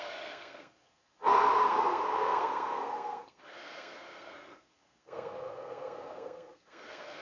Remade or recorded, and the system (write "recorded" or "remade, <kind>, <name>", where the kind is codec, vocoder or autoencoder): remade, codec, SNAC